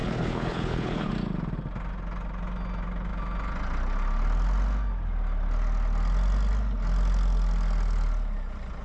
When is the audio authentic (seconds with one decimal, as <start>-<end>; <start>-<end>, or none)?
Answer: 1.1-8.8